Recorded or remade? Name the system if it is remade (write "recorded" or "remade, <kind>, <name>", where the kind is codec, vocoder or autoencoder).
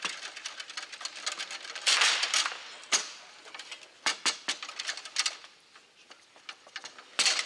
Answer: recorded